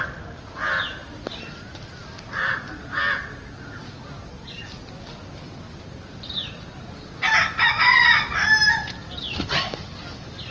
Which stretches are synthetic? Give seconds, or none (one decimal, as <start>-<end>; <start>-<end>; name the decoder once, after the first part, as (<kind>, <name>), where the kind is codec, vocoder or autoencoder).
none